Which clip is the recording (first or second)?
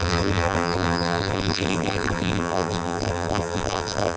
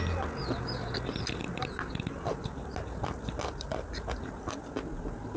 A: second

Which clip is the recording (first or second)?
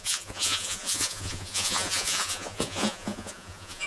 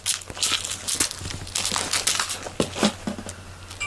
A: second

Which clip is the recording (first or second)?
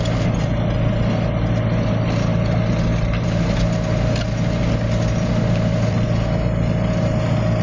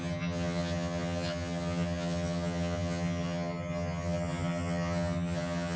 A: first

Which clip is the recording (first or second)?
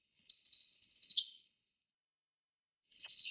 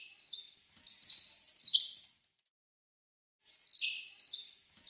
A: second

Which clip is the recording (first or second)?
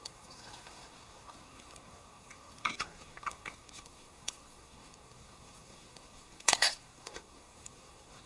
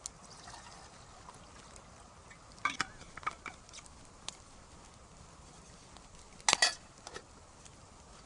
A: second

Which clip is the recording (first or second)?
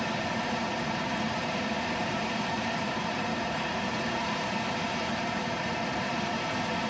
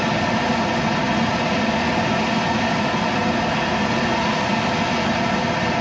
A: second